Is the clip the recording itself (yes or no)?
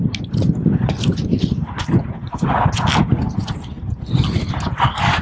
yes